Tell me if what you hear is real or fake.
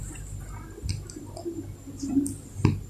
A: real